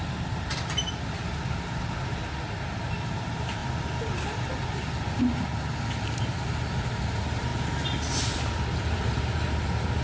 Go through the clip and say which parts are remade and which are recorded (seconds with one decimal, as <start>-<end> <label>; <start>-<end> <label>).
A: 0.0-0.5 remade; 0.5-2.5 recorded; 2.5-3.6 remade; 3.6-6.9 recorded; 6.9-7.5 remade; 7.5-8.8 recorded; 8.8-10.0 remade